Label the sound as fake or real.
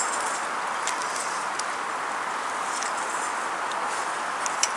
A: real